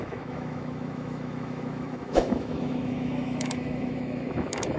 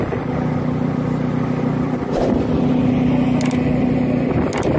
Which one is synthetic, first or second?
first